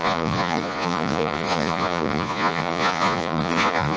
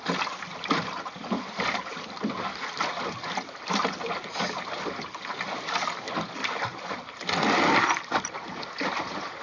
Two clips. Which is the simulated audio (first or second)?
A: first